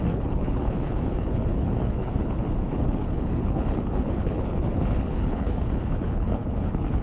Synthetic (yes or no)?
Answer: yes